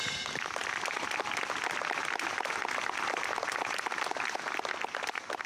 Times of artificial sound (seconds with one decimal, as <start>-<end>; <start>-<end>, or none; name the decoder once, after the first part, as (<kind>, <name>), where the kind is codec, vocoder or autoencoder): none